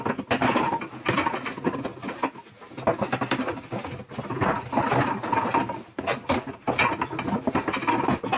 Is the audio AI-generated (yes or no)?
no